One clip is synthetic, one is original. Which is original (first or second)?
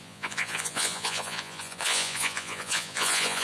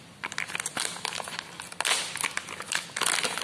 second